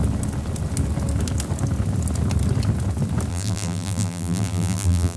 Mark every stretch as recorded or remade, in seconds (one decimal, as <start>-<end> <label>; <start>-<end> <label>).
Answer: 0.0-3.3 recorded; 3.3-5.2 remade